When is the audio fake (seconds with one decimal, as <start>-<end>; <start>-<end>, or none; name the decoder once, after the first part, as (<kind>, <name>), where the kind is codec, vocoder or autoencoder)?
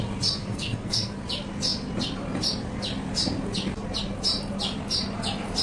0.4-1.1 (codec, SNAC)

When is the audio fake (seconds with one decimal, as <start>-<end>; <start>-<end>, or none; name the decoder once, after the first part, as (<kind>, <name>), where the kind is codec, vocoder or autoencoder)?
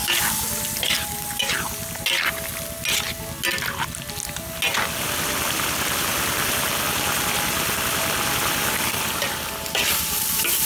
none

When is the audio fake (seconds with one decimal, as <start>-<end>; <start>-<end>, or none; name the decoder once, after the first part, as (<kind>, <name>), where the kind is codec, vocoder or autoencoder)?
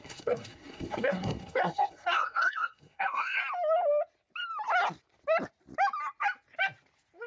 0.0-3.4 (codec, SNAC)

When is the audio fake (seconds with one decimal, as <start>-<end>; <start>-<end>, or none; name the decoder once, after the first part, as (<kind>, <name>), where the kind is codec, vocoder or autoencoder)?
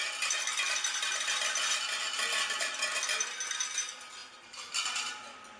none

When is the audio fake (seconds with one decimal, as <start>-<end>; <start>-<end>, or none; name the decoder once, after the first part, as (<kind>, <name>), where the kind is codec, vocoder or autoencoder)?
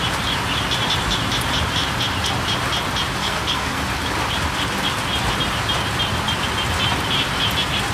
3.2-3.8 (codec, SNAC)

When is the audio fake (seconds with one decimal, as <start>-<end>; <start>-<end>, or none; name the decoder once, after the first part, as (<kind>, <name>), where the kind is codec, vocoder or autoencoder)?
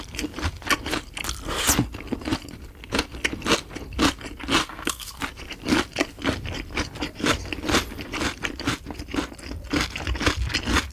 4.6-5.2 (codec, SNAC)